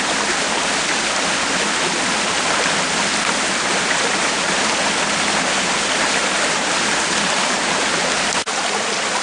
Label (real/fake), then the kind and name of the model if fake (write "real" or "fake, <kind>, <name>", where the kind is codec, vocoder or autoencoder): real